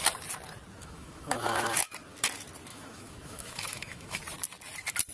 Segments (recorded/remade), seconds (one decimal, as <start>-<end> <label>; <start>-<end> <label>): 0.0-0.8 recorded; 0.8-1.9 remade; 1.9-2.7 recorded; 2.7-4.2 remade; 4.2-5.1 recorded